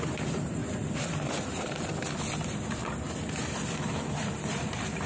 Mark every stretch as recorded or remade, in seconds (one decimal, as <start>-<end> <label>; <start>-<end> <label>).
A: 0.0-0.6 remade; 0.6-1.3 recorded; 1.3-1.9 remade; 1.9-2.4 recorded; 2.4-2.8 remade; 2.8-3.4 recorded; 3.4-5.1 remade